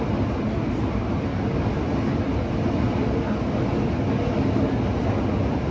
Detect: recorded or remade recorded